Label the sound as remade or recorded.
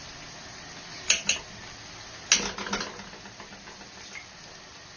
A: recorded